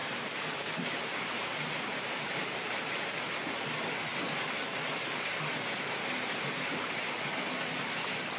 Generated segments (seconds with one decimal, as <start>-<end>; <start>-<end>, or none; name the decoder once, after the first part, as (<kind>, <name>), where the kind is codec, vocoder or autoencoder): 0.0-3.3 (vocoder, BigVGAN v2)